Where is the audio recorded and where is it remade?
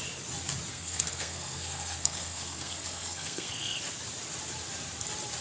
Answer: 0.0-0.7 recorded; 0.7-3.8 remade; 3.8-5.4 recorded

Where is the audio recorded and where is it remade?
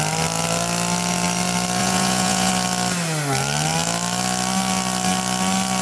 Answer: 0.0-1.8 recorded; 1.8-2.5 remade; 2.5-5.8 recorded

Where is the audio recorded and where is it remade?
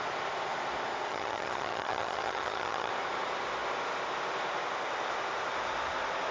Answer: 0.0-1.1 recorded; 1.1-2.9 remade; 2.9-6.3 recorded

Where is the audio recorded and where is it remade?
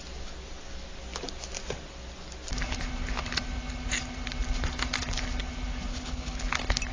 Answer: 0.0-5.9 recorded; 5.9-6.4 remade; 6.4-6.9 recorded